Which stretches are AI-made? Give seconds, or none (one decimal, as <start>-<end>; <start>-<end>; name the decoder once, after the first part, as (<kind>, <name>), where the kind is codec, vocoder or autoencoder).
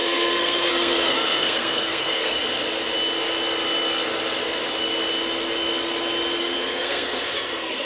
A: 0.0-2.4 (codec, SNAC); 6.4-7.9